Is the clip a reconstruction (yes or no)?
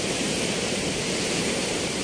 yes